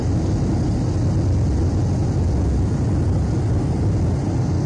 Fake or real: real